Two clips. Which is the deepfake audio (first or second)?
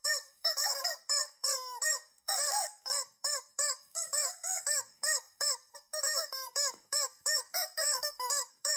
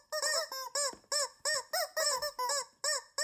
first